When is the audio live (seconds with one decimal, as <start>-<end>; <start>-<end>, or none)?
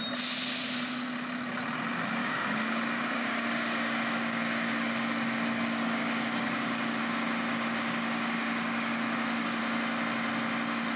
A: 0.0-2.2; 7.0-7.5; 9.6-11.0